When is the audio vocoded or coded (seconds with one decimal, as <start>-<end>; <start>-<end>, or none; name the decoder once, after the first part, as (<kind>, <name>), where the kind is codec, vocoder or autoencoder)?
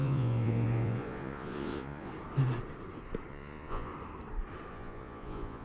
0.0-2.1 (vocoder, Vocos); 3.3-3.9; 4.7-5.6